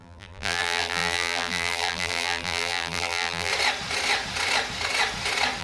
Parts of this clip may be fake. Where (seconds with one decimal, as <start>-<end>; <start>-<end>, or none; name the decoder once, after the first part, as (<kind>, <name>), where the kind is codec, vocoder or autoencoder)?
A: 0.0-3.5 (vocoder, BigVGAN v2)